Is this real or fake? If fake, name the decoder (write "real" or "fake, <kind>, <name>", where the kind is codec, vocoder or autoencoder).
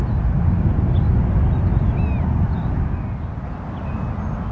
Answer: real